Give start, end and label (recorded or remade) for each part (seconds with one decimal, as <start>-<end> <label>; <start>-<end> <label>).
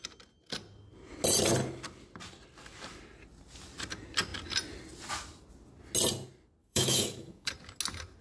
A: 0.0-6.6 recorded; 6.6-7.5 remade; 7.5-8.2 recorded